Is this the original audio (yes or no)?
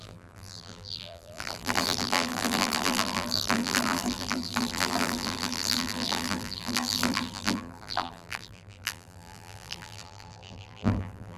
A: no